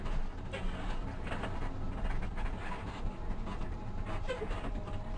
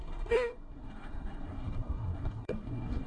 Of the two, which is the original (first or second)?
first